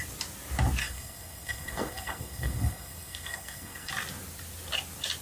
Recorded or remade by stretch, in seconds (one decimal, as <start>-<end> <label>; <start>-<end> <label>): 0.0-0.8 recorded; 0.8-3.9 remade; 3.9-5.2 recorded